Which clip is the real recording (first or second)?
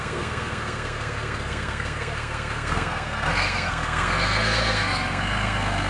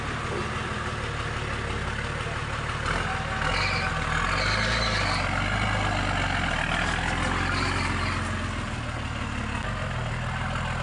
second